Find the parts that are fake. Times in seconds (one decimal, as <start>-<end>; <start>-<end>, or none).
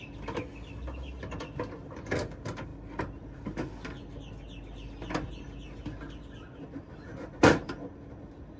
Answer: none